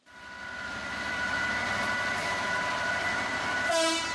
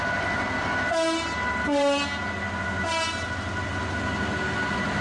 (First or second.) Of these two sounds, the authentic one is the second